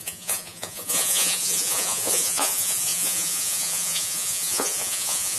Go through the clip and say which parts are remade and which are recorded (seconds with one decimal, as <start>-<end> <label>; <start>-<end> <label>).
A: 0.0-5.4 remade